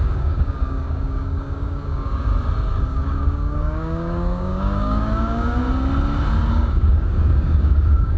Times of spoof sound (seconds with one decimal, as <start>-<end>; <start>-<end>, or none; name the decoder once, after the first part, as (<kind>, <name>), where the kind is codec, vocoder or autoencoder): 0.0-2.3 (codec, DAC); 2.8-5.6; 6.5-8.2